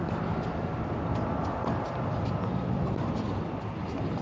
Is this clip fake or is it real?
real